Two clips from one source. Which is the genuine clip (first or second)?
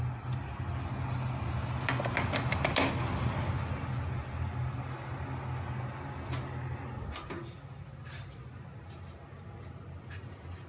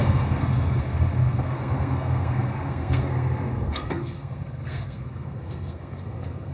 first